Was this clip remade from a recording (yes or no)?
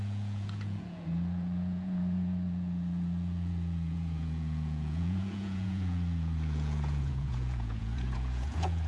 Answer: yes